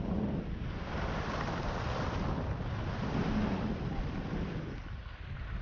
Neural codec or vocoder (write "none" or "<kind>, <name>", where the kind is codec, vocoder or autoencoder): none